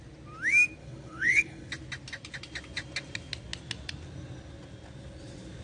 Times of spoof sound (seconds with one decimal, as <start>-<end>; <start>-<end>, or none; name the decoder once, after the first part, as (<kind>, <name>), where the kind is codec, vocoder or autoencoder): 0.8-1.7 (codec, HILCodec)